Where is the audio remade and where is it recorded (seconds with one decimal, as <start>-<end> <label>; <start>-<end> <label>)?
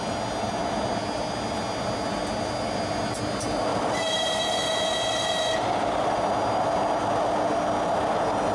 0.0-3.7 recorded; 3.7-6.2 remade; 6.2-8.5 recorded